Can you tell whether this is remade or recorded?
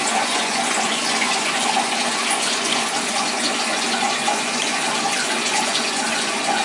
remade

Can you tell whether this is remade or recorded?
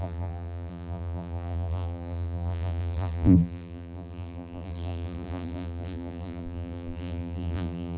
remade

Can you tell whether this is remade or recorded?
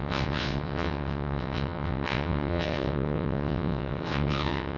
remade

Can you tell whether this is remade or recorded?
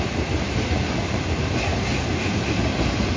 recorded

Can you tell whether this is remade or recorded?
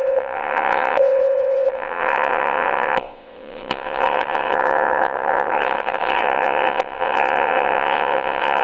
remade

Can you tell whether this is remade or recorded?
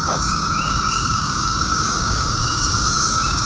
remade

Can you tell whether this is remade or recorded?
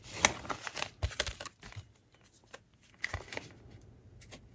recorded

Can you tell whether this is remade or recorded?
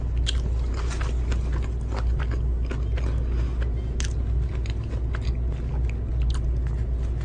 recorded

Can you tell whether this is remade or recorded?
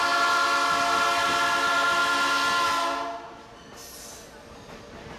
recorded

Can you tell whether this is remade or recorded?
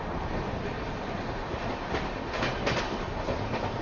recorded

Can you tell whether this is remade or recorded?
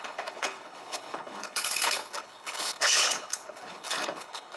remade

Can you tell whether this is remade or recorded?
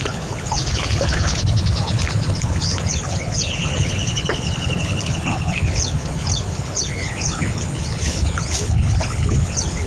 remade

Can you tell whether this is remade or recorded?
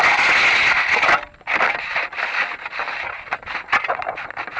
recorded